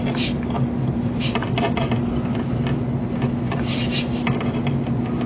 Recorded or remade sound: recorded